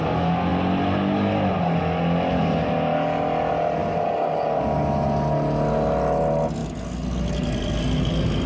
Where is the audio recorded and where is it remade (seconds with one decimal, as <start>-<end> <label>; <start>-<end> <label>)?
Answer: 0.0-8.5 recorded